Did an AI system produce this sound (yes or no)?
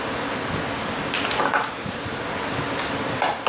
no